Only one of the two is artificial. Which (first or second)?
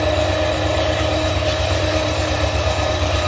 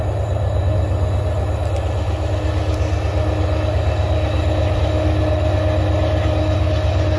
first